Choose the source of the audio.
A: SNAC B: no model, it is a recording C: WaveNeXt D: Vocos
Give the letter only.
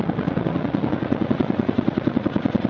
D